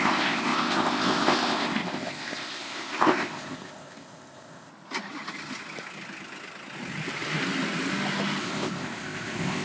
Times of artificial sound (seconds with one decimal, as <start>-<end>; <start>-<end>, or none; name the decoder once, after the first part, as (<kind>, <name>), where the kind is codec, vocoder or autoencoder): 0.0-4.7 (codec, ZipCodec); 8.4-9.6